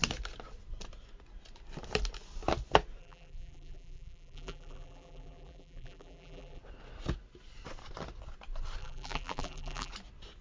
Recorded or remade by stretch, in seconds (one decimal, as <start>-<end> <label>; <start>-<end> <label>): 0.0-3.0 recorded; 3.0-6.6 remade; 6.6-8.8 recorded; 8.8-9.9 remade; 9.9-10.4 recorded